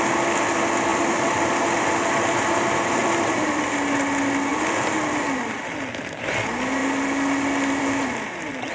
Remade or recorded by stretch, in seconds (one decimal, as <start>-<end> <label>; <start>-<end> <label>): 0.0-0.9 recorded; 0.9-1.6 remade; 1.6-3.0 recorded; 3.0-3.7 remade; 3.7-4.5 recorded; 4.5-6.3 remade; 6.3-8.7 recorded